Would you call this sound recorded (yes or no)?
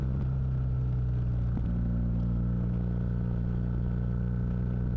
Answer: yes